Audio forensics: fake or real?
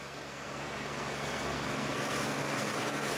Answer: fake